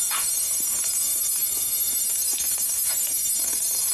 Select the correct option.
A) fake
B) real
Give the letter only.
A